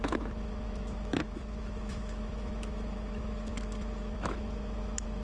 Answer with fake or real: fake